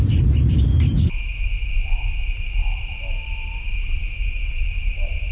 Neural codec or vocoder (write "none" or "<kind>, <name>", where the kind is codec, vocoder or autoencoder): none